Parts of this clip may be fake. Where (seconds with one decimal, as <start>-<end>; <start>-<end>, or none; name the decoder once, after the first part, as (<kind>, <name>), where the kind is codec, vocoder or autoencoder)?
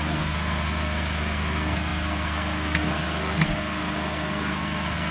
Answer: 0.0-5.1 (codec, SNAC)